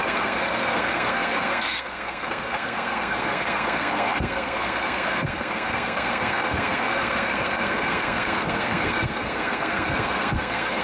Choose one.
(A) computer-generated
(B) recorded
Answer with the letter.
A